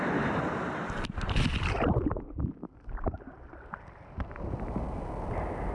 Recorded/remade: recorded